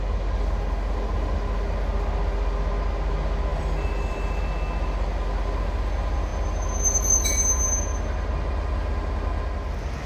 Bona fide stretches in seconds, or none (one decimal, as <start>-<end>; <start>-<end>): 0.0-3.5; 4.4-10.1